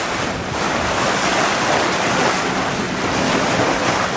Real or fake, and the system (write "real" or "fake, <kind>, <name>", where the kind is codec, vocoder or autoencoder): real